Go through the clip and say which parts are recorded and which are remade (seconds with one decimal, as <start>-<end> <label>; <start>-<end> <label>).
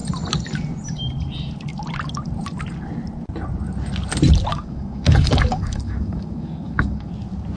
0.0-4.5 recorded; 4.5-7.1 remade; 7.1-7.6 recorded